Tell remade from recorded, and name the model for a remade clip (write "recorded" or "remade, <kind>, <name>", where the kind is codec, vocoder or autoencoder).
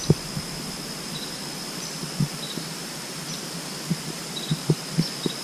recorded